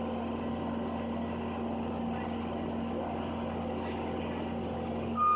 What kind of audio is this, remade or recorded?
recorded